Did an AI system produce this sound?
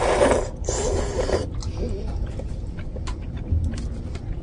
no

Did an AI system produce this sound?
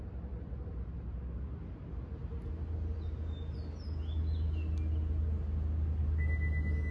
no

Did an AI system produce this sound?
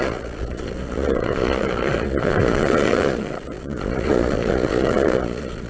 yes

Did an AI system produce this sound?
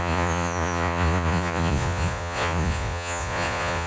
yes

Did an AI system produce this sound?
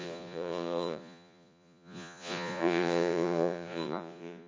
yes